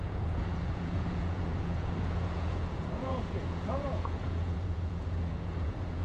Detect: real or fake fake